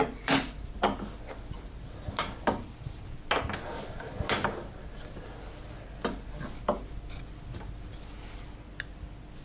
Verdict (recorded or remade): recorded